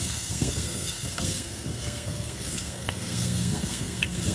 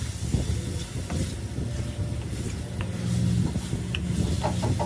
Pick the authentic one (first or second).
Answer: second